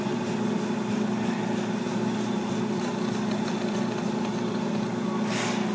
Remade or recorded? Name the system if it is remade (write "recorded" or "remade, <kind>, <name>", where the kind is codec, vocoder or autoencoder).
recorded